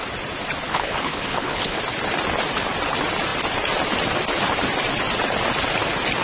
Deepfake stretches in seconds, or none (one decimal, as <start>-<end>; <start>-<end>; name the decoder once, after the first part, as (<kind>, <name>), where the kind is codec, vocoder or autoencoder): 0.7-1.8 (codec, HILCodec)